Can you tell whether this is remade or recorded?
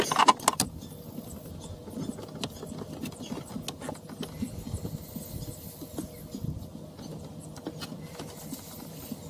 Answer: recorded